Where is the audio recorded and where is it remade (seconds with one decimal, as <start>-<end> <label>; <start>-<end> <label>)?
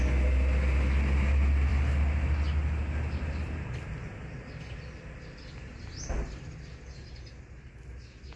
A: 0.0-8.4 recorded